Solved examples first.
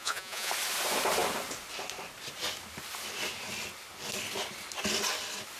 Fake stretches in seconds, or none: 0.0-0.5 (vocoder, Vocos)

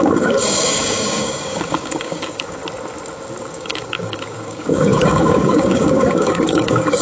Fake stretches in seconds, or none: 0.0-2.6 (codec, DAC); 3.4-7.0

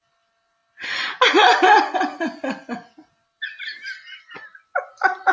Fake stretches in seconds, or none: none

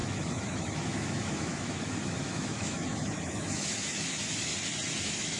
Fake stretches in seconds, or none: 0.0-4.5 (autoencoder, DAC-VAE); 5.0-5.4

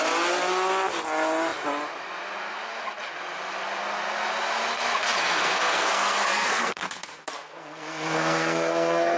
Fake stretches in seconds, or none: 5.2-9.2 (codec, SNAC)

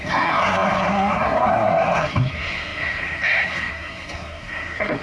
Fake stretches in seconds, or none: 0.0-5.0 (codec, SNAC)

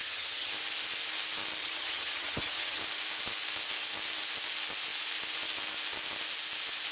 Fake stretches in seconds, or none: 0.0-0.5 (vocoder, HiFi-GAN); 1.6-2.8

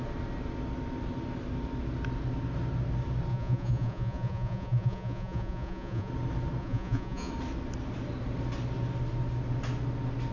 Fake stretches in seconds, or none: 3.3-6.1 (vocoder, Vocos); 6.6-7.3